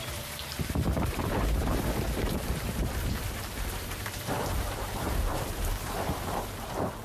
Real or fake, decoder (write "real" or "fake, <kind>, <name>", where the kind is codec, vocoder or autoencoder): fake, vocoder, BigVGAN v2